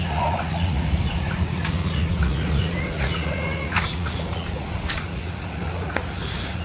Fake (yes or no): yes